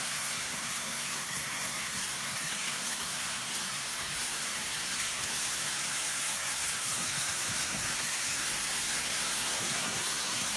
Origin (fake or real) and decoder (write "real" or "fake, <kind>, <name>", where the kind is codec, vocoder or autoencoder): fake, codec, SNAC